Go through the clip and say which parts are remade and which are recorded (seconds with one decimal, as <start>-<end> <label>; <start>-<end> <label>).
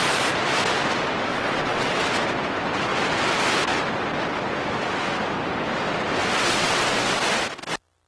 0.0-1.3 recorded; 1.3-2.0 remade; 2.0-6.4 recorded; 6.4-7.2 remade; 7.2-8.1 recorded